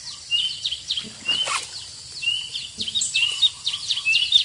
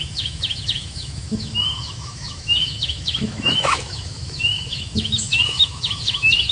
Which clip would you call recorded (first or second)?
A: first